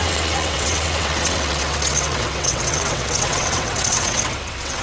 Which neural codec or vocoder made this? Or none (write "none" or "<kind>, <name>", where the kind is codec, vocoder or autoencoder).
vocoder, WaveNeXt